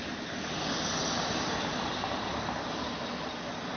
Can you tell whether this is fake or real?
real